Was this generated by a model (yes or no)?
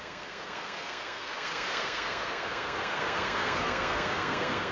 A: yes